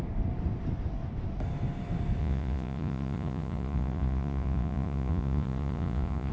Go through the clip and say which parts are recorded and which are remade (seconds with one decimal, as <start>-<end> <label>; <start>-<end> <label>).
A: 0.0-2.2 recorded; 2.2-6.3 remade